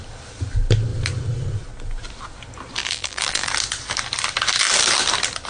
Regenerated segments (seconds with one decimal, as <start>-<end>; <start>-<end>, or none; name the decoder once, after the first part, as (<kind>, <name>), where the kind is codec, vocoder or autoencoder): 2.8-3.5 (vocoder, BigVGAN v2)